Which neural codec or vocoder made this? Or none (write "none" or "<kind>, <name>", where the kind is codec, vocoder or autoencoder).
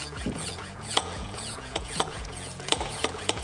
vocoder, Vocos